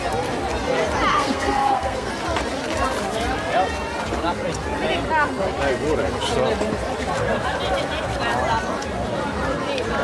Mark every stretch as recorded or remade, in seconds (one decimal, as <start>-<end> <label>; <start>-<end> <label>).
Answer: 0.0-1.1 recorded; 1.1-2.1 remade; 2.1-10.0 recorded